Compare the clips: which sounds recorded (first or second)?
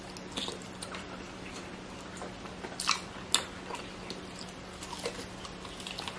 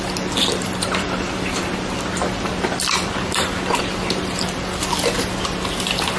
first